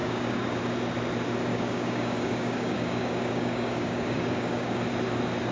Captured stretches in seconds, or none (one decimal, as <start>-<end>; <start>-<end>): 0.6-1.5; 4.8-5.5